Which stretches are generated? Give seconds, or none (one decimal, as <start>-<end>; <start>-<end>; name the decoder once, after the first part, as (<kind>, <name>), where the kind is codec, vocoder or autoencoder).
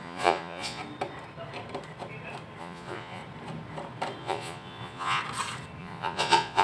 0.0-0.8 (vocoder, Vocos); 2.6-3.2; 4.2-5.2; 5.8-6.6